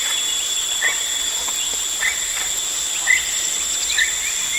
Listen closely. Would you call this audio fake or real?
real